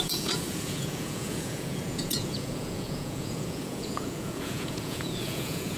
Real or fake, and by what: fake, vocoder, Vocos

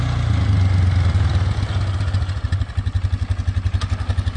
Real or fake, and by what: real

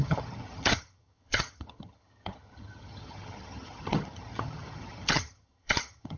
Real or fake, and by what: fake, vocoder, HiFi-GAN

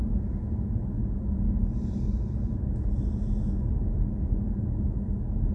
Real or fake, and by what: real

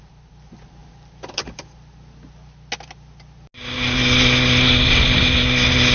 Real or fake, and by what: real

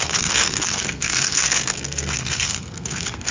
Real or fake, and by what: fake, codec, SNAC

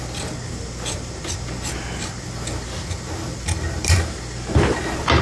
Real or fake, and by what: real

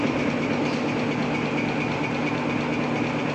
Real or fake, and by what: real